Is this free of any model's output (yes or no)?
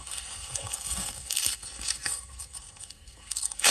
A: no